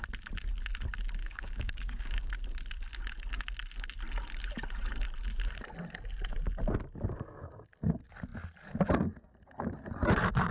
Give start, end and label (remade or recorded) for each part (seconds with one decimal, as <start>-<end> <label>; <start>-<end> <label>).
0.0-1.2 recorded; 1.2-2.3 remade; 2.3-10.5 recorded